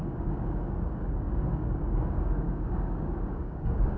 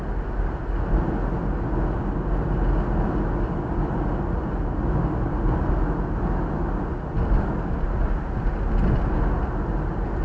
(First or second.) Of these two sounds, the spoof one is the first